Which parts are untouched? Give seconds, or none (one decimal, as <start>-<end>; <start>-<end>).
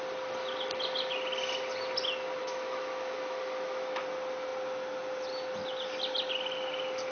0.0-2.4; 4.0-7.1